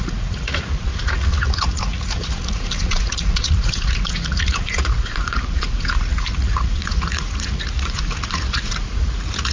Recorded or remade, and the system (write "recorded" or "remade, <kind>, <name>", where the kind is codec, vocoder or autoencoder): remade, vocoder, Vocos